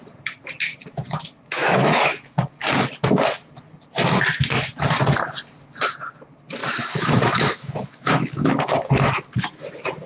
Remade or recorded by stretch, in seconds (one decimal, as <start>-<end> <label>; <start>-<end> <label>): 0.0-1.6 recorded; 1.6-2.4 remade; 2.4-6.6 recorded; 6.6-8.9 remade; 8.9-10.1 recorded